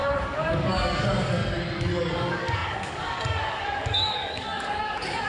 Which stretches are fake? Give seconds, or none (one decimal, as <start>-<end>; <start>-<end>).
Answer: 0.0-1.4; 2.0-5.3